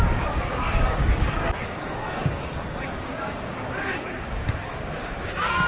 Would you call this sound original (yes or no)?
no